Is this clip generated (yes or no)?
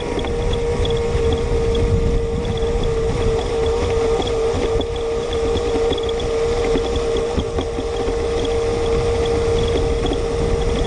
no